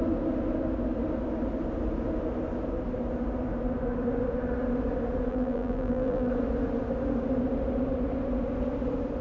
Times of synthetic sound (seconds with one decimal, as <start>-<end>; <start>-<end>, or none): 5.3-6.3